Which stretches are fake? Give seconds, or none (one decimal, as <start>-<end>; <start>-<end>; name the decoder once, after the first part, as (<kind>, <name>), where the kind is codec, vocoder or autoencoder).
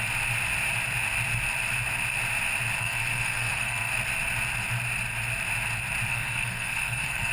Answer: 2.8-3.9 (codec, SNAC); 6.1-7.3